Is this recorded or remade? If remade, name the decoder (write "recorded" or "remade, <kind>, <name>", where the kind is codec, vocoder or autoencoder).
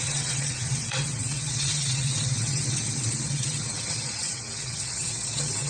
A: remade, vocoder, WaveNeXt